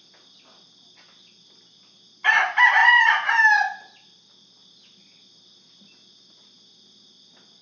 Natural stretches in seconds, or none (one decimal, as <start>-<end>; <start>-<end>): 0.0-7.6